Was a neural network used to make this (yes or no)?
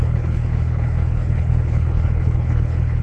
yes